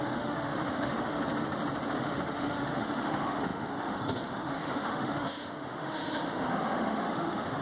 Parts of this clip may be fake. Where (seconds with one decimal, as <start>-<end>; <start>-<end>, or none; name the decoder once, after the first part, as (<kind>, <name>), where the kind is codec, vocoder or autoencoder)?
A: 0.0-1.2 (autoencoder, DAC-VAE); 1.9-7.6